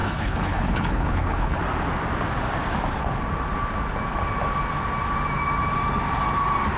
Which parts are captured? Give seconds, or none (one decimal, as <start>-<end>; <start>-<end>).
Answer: 1.6-6.8